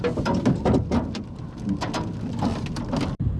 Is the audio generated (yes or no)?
no